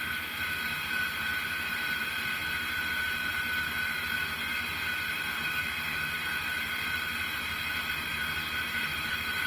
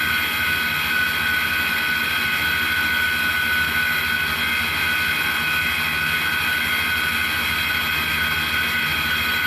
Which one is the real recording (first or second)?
second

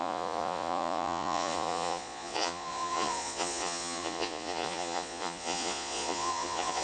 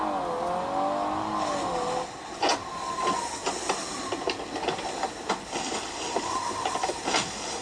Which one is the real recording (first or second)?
second